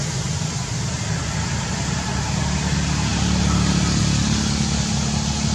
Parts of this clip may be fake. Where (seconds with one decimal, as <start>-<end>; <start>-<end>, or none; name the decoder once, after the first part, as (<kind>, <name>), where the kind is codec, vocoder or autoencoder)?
none